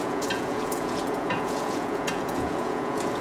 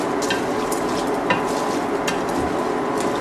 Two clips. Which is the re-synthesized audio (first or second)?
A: first